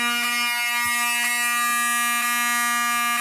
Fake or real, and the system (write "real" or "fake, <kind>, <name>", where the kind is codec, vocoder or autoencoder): real